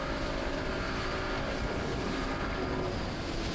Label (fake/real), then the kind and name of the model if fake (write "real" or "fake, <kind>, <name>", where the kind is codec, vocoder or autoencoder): real